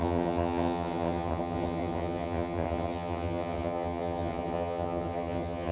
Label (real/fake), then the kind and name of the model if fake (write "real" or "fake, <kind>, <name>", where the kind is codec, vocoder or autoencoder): fake, vocoder, HiFi-GAN